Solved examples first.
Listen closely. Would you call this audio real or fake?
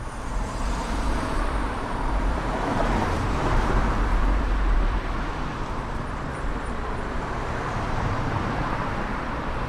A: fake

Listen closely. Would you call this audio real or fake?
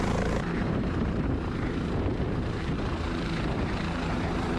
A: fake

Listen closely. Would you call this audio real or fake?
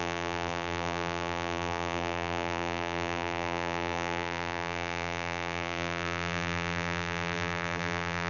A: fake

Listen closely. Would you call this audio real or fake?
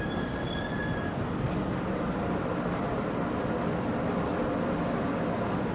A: real